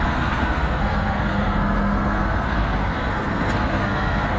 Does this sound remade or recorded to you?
remade